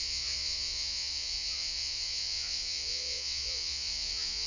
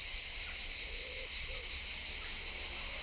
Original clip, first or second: second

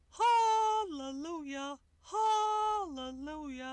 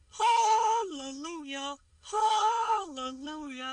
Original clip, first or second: first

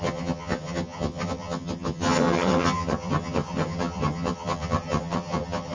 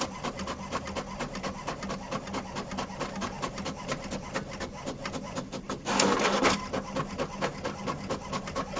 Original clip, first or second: second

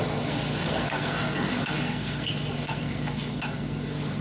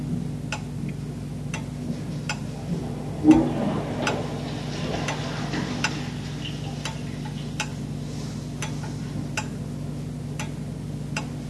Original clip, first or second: second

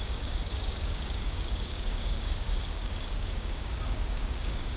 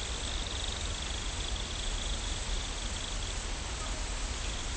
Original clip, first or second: second